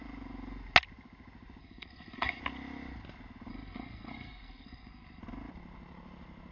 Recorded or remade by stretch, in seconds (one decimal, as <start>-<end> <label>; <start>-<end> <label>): 0.0-1.6 recorded; 1.6-2.4 remade; 2.4-3.5 recorded; 3.5-5.2 remade; 5.2-6.5 recorded